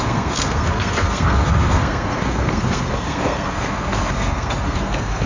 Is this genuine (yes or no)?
no